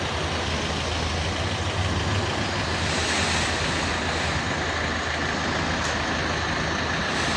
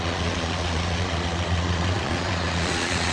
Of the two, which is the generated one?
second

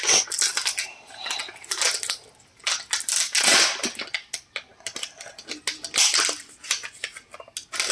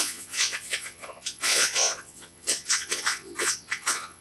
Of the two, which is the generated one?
second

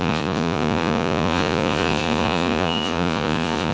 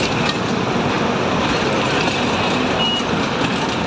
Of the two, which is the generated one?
first